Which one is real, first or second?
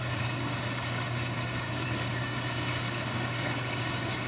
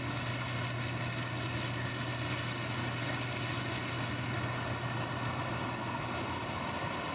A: second